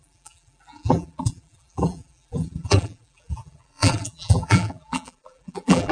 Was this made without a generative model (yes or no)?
no